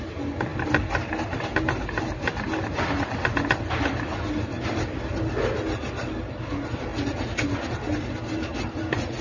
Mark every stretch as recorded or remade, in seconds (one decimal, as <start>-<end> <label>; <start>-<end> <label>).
0.0-0.5 remade; 0.5-2.7 recorded; 2.7-6.9 remade; 6.9-7.7 recorded; 7.7-9.2 remade